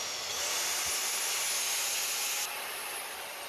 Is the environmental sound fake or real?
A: real